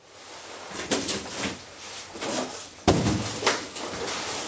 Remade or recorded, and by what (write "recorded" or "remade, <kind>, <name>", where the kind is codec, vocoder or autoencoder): recorded